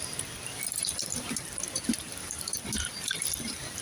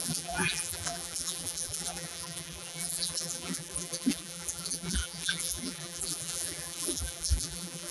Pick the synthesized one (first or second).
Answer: second